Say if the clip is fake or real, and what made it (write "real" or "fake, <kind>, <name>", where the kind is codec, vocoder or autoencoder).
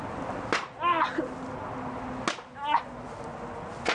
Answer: real